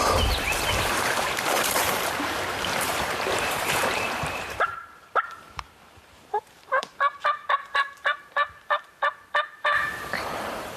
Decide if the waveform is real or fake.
fake